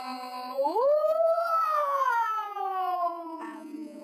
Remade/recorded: remade